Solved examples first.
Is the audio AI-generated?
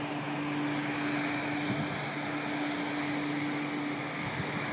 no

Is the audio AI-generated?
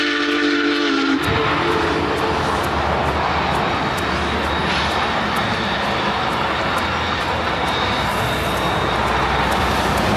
no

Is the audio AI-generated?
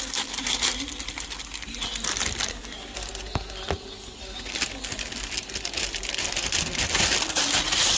no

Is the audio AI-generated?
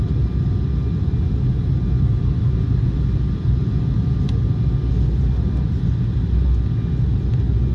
no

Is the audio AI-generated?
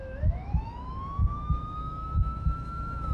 yes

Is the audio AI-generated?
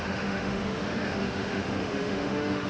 yes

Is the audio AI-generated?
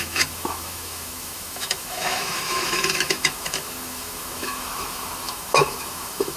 yes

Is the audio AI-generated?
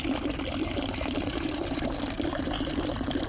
no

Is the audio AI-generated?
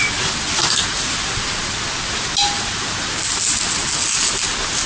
no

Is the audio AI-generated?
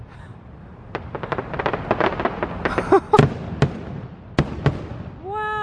no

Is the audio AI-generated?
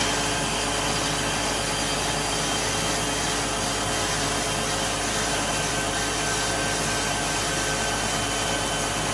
no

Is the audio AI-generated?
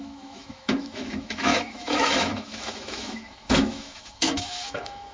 yes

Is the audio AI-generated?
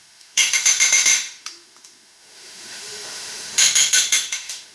yes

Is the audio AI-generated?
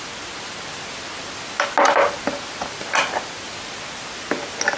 no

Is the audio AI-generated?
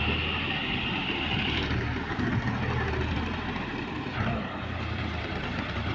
no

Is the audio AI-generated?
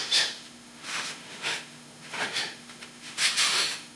yes